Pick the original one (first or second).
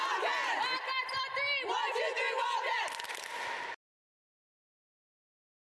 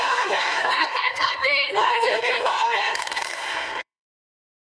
first